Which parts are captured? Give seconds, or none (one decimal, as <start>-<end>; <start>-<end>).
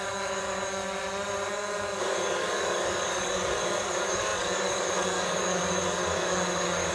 0.8-1.5